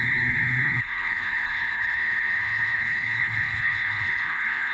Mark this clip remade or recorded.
remade